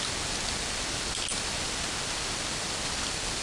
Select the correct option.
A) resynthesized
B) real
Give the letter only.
B